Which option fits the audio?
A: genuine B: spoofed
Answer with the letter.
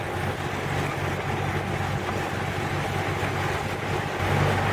A